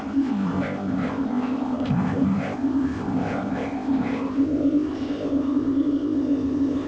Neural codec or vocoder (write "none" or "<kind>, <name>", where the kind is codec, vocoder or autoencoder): codec, ZipCodec